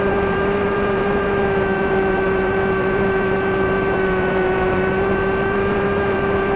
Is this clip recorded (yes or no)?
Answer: no